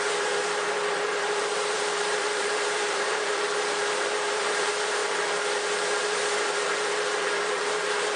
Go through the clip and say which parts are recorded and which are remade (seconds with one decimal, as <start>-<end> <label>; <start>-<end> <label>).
0.0-5.0 remade; 5.0-6.0 recorded; 6.0-8.2 remade